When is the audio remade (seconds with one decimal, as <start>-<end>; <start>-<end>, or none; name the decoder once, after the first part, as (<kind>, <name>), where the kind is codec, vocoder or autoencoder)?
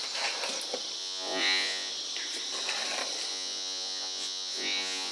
1.0-1.9 (vocoder, Vocos); 3.3-5.1